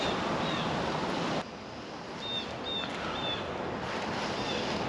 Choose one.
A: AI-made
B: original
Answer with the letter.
B